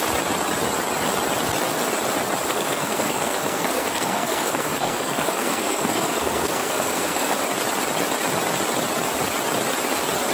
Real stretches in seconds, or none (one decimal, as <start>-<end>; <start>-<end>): 0.0-2.5; 7.4-10.3